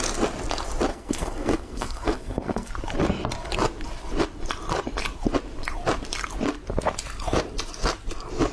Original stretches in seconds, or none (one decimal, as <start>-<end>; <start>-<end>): 0.0-0.9; 2.7-8.5